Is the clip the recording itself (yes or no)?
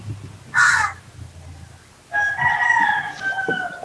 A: yes